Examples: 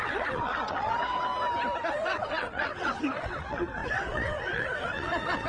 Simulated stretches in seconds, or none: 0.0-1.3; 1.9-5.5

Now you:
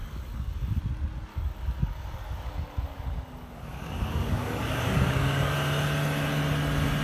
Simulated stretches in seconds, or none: 0.0-0.8; 1.3-5.5

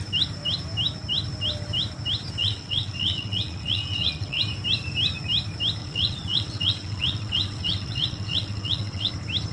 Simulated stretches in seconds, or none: 2.4-4.4; 5.8-9.1